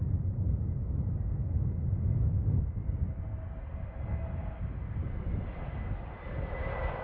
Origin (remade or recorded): recorded